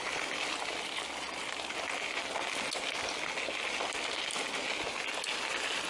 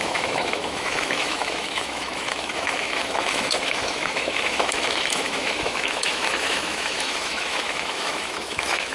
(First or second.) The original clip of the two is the first